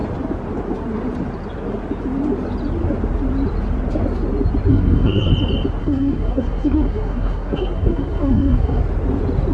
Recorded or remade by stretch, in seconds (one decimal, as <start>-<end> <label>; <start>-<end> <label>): 0.0-4.7 recorded; 4.7-5.3 remade; 5.3-5.8 recorded; 5.8-8.8 remade; 8.8-9.5 recorded